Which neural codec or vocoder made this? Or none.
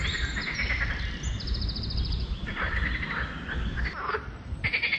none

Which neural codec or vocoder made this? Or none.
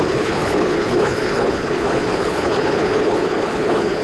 codec, HILCodec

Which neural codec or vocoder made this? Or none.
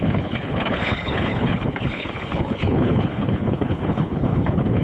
codec, HILCodec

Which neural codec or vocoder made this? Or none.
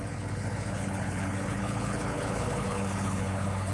codec, HILCodec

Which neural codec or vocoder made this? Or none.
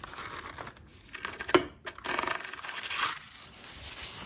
none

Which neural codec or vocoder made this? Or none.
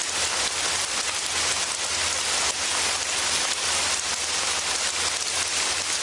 none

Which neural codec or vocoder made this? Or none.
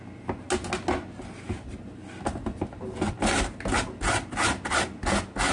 none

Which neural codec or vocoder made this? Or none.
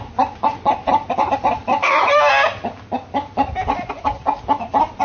none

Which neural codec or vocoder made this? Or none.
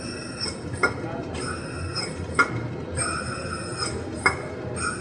none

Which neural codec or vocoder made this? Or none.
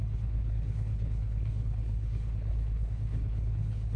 codec, HILCodec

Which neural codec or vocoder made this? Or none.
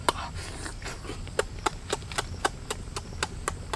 none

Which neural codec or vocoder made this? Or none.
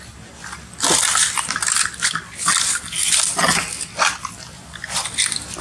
none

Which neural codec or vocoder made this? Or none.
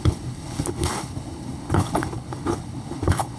codec, HILCodec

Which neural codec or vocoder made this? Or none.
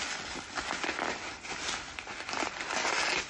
none